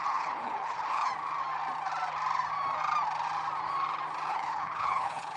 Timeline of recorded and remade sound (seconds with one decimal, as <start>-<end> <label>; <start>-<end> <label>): 0.0-1.1 remade; 1.1-4.3 recorded; 4.3-5.4 remade